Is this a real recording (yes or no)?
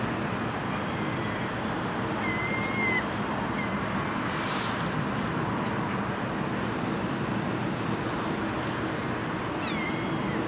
yes